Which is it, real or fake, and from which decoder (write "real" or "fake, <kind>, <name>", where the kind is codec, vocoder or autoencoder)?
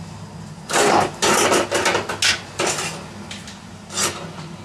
real